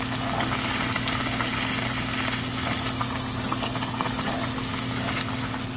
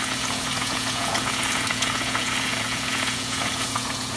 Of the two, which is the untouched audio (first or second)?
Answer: first